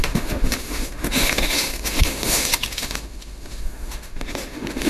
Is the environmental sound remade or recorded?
remade